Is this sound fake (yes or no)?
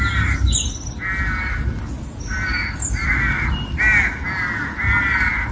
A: no